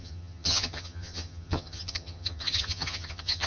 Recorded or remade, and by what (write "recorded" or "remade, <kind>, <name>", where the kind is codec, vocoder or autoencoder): remade, vocoder, HiFi-GAN